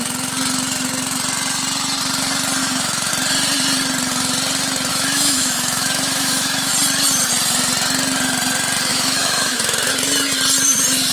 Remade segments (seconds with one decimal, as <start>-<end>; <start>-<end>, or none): 2.6-3.1; 4.9-6.7; 8.9-9.9